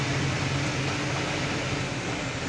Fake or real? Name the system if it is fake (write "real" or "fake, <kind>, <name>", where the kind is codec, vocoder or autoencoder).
real